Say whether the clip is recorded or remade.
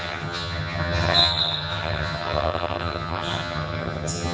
remade